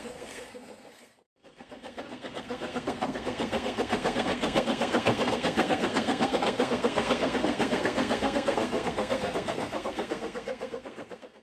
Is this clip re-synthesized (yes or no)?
yes